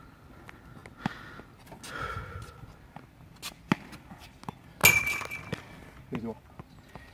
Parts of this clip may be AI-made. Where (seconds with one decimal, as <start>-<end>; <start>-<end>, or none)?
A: none